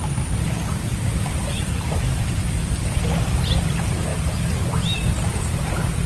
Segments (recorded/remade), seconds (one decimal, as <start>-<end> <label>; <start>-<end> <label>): 0.0-1.0 recorded; 1.0-4.1 remade; 4.1-5.5 recorded; 5.5-6.1 remade